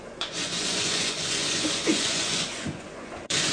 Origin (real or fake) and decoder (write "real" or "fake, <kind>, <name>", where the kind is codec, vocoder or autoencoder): fake, vocoder, Vocos